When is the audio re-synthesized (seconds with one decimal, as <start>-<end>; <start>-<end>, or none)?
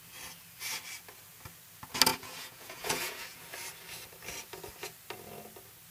2.1-3.4